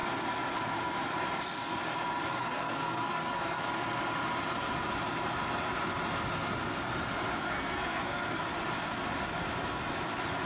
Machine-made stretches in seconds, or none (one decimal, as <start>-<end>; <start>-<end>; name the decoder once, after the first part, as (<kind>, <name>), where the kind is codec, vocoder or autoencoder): 2.4-3.6 (codec, SNAC); 7.4-8.4